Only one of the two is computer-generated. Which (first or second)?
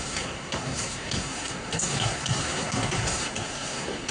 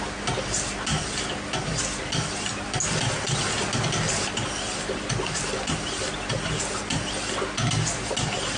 first